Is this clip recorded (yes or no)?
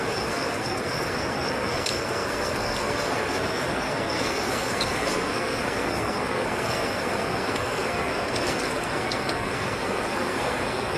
no